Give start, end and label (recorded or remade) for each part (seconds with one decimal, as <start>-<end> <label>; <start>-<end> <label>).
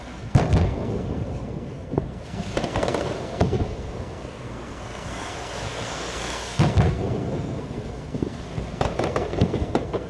0.0-10.1 remade